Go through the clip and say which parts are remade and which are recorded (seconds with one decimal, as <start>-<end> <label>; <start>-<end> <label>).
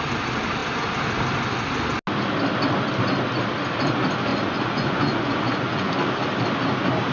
0.0-4.3 recorded; 4.3-5.9 remade; 5.9-7.1 recorded